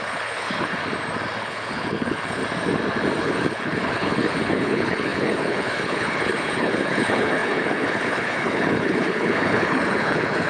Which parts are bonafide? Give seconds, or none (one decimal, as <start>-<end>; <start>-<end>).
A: 0.7-1.4; 2.4-3.2